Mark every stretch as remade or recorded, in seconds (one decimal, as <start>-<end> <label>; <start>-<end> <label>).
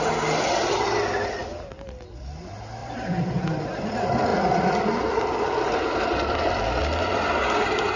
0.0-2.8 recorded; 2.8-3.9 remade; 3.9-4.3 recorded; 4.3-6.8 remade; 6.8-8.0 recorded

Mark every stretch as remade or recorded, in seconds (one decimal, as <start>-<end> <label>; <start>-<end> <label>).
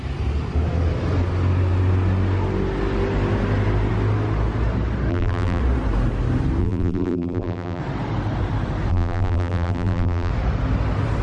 0.0-5.1 recorded; 5.1-5.6 remade; 5.6-6.6 recorded; 6.6-7.8 remade; 7.8-8.9 recorded; 8.9-10.3 remade; 10.3-11.2 recorded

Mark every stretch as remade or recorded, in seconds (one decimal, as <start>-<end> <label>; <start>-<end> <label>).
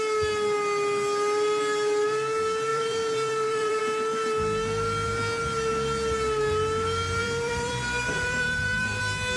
0.0-2.7 recorded; 2.7-3.8 remade; 3.8-7.2 recorded; 7.2-9.0 remade; 9.0-9.4 recorded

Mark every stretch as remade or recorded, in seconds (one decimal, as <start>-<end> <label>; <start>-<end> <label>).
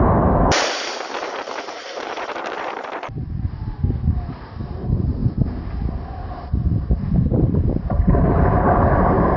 0.0-5.2 remade; 5.2-6.5 recorded; 6.5-9.4 remade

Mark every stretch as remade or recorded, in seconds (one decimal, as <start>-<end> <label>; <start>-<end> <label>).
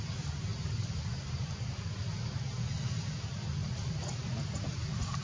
0.0-0.5 recorded; 0.5-1.5 remade; 1.5-3.6 recorded; 3.6-4.3 remade; 4.3-5.2 recorded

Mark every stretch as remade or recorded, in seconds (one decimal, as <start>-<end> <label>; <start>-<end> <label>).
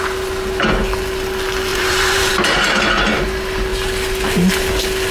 0.0-1.7 recorded; 1.7-2.3 remade; 2.3-5.1 recorded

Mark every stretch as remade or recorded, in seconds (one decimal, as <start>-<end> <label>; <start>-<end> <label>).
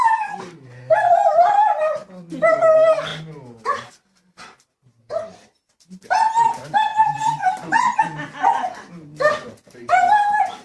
0.0-1.3 recorded; 1.3-1.8 remade; 1.8-3.1 recorded; 3.1-3.9 remade; 3.9-6.9 recorded; 6.9-8.0 remade; 8.0-10.6 recorded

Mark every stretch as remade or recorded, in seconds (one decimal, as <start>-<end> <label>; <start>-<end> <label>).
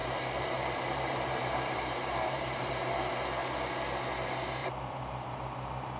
0.0-2.7 remade; 2.7-4.6 recorded; 4.6-6.0 remade